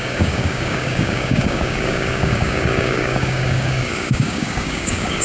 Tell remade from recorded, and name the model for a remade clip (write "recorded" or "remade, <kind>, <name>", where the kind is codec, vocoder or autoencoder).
remade, codec, DAC